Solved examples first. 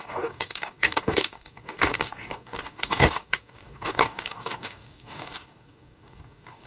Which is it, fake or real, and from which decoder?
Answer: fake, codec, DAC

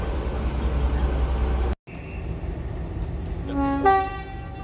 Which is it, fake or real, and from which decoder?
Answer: real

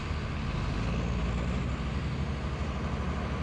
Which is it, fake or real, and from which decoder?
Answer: real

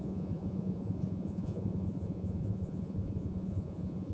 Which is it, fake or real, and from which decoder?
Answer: fake, vocoder, Vocos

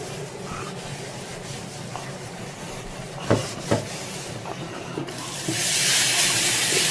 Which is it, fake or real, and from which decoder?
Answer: fake, vocoder, BigVGAN v2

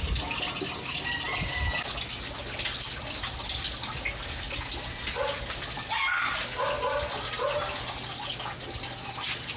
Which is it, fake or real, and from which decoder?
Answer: real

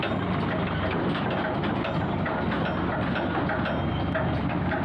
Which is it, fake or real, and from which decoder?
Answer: real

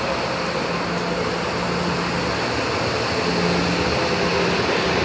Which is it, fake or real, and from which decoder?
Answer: real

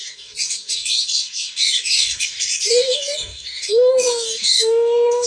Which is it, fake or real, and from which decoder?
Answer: fake, codec, DAC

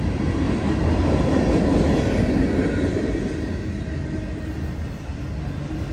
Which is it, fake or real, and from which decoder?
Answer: real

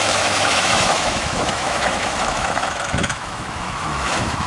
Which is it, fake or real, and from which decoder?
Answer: fake, autoencoder, DAC-VAE